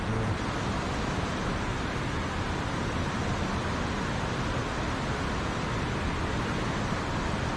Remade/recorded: recorded